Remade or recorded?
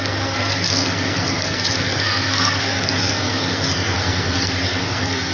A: remade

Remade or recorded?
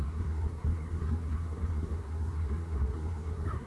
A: remade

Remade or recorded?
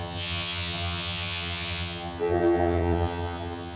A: remade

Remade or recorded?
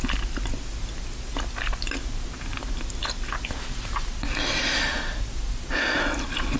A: recorded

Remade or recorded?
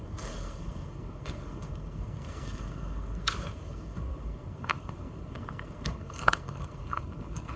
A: remade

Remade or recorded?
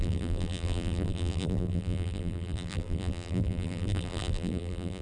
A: remade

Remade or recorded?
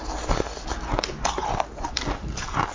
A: recorded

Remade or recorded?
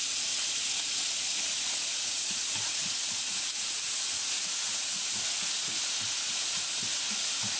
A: remade